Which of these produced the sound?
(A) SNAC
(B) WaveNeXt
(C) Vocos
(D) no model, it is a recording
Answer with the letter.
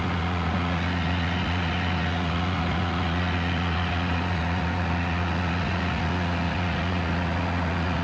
C